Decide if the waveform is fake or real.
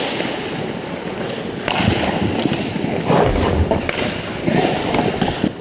real